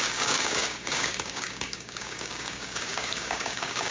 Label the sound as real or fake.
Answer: fake